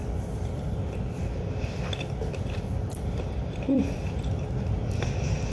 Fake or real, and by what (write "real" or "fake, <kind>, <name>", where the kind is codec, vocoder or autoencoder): fake, vocoder, BigVGAN v2